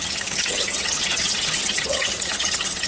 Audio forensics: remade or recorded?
remade